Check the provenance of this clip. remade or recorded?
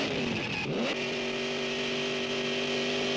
recorded